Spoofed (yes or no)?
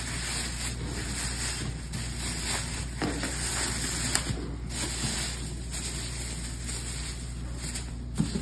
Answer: no